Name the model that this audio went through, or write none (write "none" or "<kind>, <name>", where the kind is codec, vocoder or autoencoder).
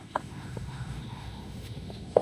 autoencoder, DAC-VAE